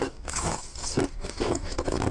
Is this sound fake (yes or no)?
yes